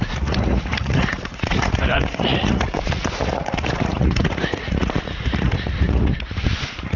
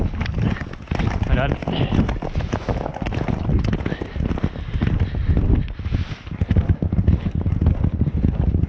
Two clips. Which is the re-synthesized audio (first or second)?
first